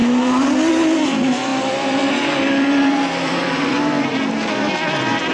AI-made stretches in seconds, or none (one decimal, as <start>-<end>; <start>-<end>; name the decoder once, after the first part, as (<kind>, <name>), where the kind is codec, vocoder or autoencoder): 0.7-5.3 (vocoder, BigVGAN v2)